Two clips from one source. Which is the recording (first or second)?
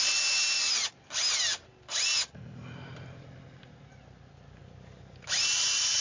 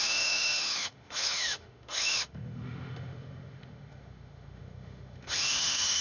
first